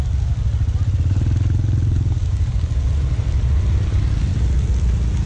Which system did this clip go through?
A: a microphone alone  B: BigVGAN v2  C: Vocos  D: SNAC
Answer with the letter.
A